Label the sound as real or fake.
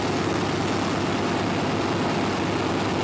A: real